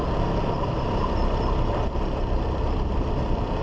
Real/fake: real